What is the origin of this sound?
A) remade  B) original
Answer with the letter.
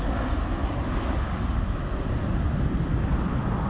B